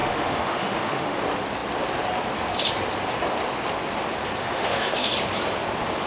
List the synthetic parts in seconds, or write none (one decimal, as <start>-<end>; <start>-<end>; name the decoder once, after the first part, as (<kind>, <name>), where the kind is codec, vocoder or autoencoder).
0.0-1.2 (autoencoder, DAC-VAE); 4.4-5.1